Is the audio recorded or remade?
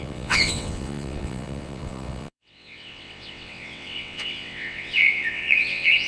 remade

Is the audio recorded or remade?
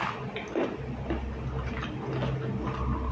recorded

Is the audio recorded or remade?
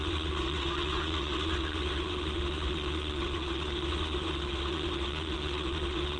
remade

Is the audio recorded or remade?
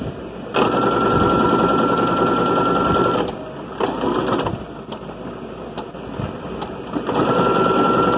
recorded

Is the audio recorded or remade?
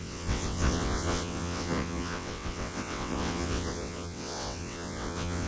remade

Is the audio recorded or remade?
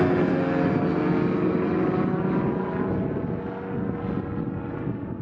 recorded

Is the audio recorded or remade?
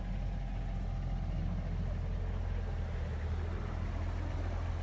recorded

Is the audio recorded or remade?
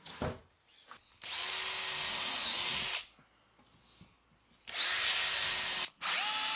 recorded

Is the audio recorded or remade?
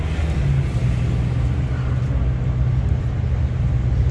recorded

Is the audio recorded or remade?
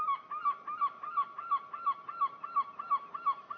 recorded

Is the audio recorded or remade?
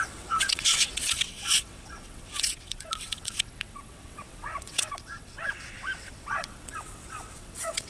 remade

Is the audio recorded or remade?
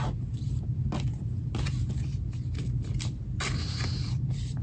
recorded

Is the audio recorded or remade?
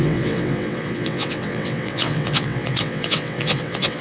remade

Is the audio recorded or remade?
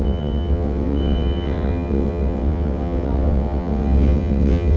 remade